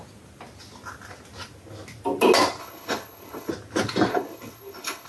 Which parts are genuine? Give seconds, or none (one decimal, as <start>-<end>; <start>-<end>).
0.0-2.6; 3.5-4.1